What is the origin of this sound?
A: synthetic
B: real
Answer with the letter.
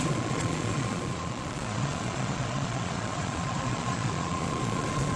A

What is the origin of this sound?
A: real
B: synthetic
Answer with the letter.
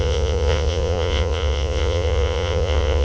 B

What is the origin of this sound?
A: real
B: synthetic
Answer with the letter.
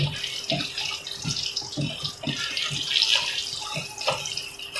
A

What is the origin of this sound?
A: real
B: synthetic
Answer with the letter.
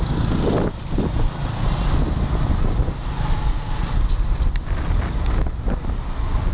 A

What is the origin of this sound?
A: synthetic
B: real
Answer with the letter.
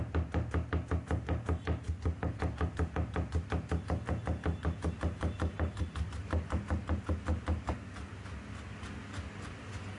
B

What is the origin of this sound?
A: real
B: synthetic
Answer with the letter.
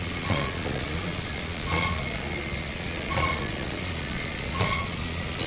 B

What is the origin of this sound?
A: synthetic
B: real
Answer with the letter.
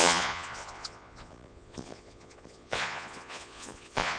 A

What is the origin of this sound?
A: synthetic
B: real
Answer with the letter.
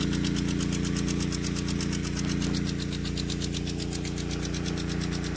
B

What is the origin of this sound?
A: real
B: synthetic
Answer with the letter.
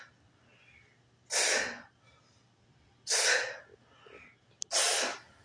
A